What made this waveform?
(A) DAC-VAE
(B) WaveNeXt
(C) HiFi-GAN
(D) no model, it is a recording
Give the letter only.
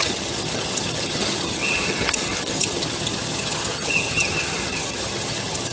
C